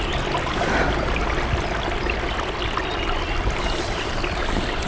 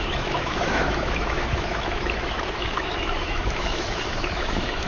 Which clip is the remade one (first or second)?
second